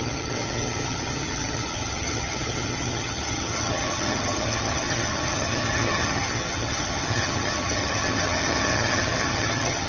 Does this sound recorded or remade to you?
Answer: remade